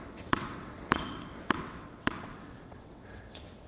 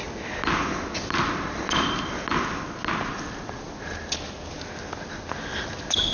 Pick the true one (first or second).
second